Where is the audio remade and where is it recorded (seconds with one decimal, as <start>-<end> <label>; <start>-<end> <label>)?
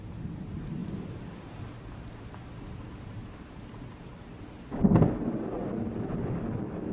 0.0-0.8 remade; 0.8-2.7 recorded; 2.7-3.2 remade; 3.2-6.9 recorded